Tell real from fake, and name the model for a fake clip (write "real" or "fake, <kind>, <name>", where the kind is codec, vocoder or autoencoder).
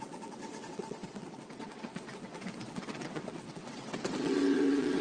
fake, vocoder, WaveNeXt